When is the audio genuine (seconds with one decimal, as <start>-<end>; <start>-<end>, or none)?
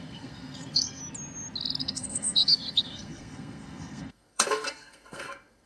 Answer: 1.0-1.8